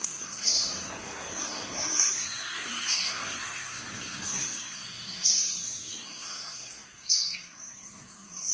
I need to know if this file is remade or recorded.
remade